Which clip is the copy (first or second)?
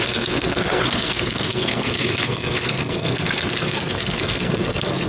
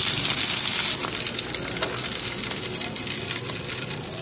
first